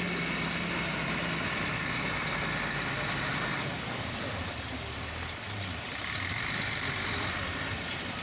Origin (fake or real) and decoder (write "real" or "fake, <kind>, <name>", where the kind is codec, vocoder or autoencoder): real